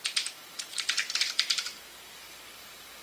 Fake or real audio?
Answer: fake